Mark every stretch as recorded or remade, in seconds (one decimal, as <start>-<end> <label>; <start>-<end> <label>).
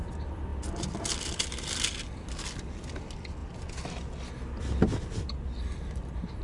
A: 0.0-6.4 recorded